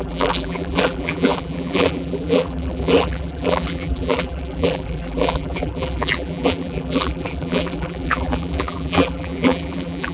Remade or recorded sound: remade